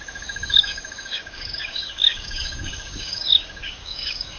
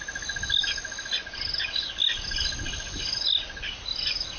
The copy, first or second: first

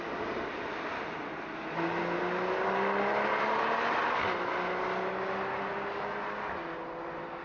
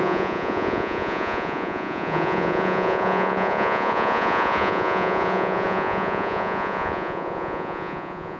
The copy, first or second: second